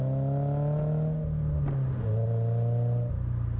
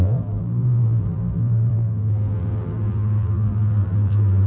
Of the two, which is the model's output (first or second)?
second